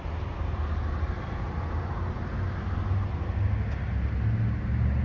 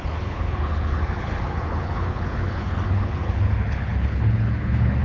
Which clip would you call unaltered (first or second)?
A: first